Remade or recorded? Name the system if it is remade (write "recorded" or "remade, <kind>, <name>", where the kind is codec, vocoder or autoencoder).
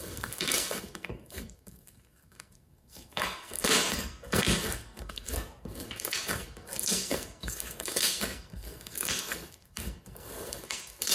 remade, codec, SNAC